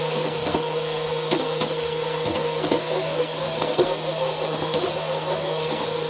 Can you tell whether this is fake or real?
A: fake